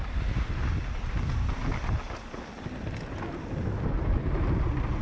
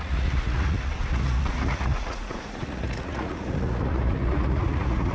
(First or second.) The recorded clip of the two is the first